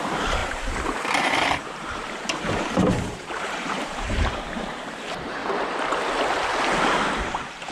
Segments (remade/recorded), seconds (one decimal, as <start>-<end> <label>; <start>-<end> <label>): 0.0-5.4 remade; 5.4-7.3 recorded; 7.3-7.7 remade